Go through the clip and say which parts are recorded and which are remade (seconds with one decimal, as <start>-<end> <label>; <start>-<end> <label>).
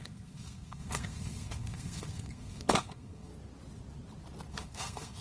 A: 0.0-3.3 remade; 3.3-4.5 recorded; 4.5-5.2 remade